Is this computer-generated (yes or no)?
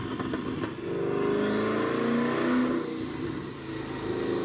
no